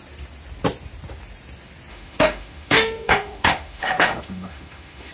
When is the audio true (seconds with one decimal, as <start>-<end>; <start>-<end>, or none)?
0.0-1.9